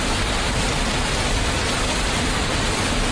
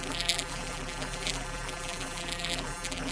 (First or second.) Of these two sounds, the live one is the first